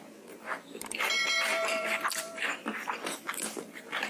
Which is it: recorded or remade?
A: remade